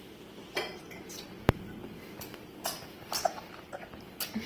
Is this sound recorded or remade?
recorded